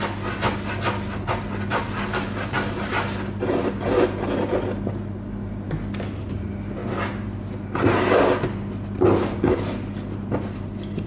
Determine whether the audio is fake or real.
real